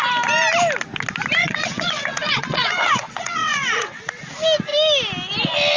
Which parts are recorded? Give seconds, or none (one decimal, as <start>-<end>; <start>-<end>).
0.0-1.4; 4.1-5.8